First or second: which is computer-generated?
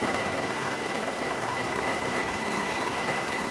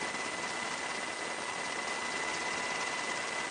first